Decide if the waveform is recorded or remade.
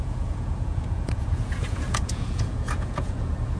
remade